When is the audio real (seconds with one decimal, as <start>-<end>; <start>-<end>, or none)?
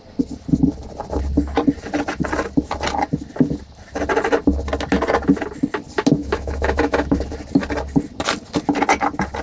0.0-6.2; 7.2-9.4